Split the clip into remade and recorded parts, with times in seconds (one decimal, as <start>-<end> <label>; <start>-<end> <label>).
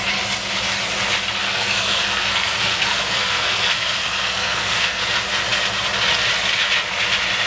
0.0-1.4 recorded; 1.4-5.0 remade; 5.0-7.5 recorded